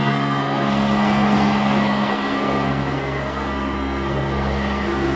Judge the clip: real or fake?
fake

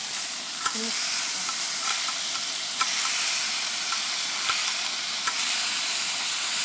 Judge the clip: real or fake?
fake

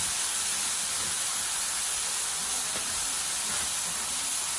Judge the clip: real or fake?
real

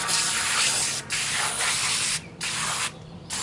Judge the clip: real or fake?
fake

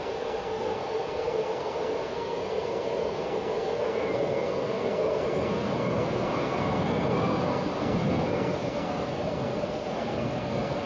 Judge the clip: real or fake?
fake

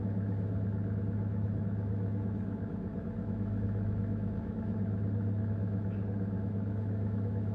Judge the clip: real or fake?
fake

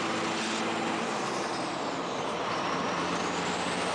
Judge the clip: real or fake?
real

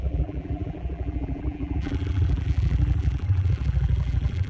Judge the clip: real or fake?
fake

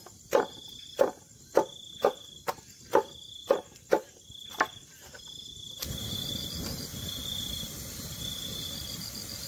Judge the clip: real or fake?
real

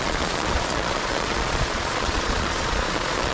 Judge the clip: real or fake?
fake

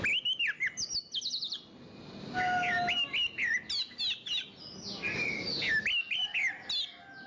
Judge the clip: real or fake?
real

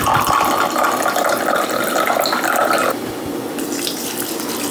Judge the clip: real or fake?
real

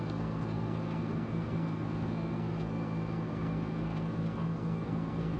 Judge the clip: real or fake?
fake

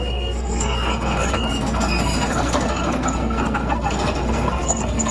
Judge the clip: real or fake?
fake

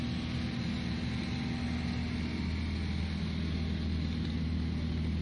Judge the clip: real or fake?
real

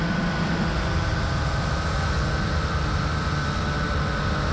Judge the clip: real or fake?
real